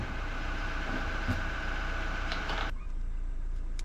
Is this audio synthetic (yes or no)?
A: yes